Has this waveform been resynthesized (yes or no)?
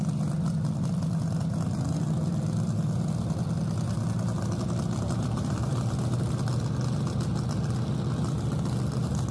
no